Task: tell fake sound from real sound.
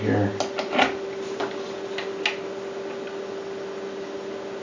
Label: real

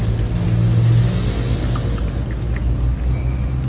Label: real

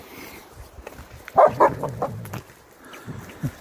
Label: real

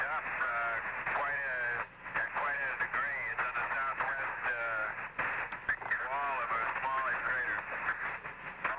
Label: real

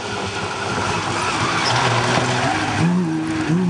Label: real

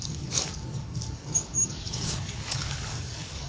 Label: fake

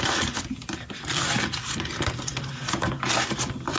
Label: real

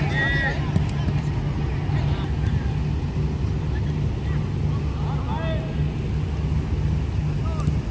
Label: real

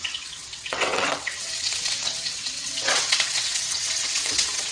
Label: fake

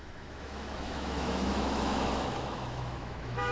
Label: fake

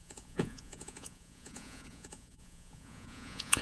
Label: fake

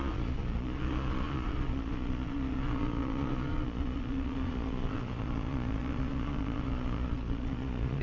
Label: fake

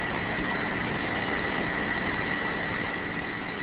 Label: real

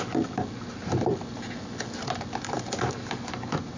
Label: real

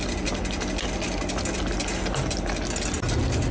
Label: real